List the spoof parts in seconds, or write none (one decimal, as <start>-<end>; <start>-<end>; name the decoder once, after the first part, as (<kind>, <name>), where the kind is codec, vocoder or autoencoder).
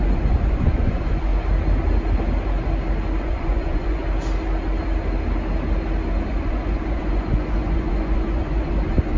0.0-1.3 (vocoder, Vocos); 3.2-4.0; 6.3-9.2